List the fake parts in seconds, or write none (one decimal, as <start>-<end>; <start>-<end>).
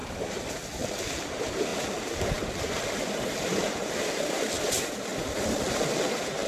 0.0-0.5; 1.7-4.5